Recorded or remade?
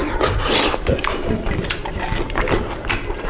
recorded